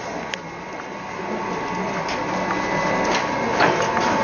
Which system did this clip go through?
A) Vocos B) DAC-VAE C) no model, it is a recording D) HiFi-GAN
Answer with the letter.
C